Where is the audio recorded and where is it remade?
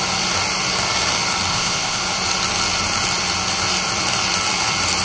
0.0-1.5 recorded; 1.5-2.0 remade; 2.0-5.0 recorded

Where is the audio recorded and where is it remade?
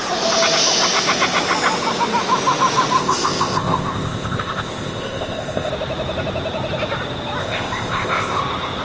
0.0-3.0 recorded; 3.0-5.7 remade; 5.7-7.4 recorded; 7.4-8.4 remade; 8.4-8.8 recorded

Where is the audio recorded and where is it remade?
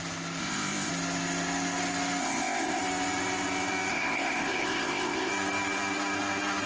0.0-0.4 recorded; 0.4-0.9 remade; 0.9-2.2 recorded; 2.2-2.8 remade; 2.8-3.9 recorded; 3.9-5.3 remade; 5.3-6.7 recorded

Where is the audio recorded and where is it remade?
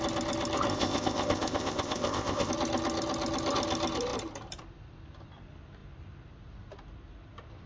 0.0-0.7 recorded; 0.7-2.5 remade; 2.5-7.7 recorded